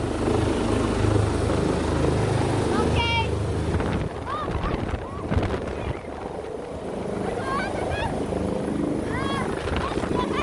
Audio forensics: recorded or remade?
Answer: recorded